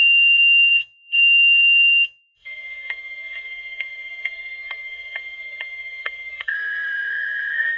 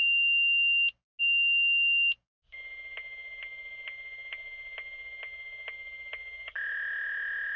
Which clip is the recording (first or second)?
second